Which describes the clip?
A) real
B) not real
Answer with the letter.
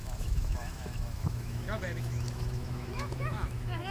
B